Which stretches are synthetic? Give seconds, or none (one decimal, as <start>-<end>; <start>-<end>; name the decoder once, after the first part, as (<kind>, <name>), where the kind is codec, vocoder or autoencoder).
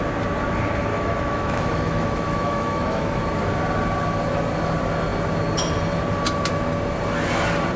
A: 0.9-3.2 (autoencoder, DAC-VAE)